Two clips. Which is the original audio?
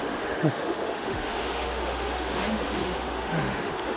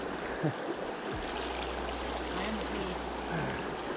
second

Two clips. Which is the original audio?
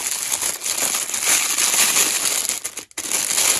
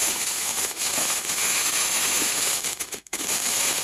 first